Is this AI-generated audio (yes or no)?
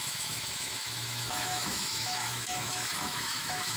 yes